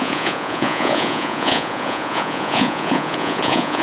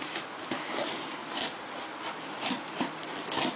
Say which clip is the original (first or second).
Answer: second